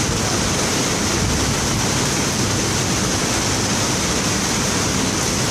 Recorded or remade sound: recorded